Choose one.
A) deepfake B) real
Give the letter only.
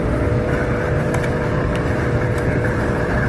A